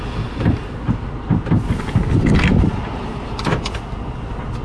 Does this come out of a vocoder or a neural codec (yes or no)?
no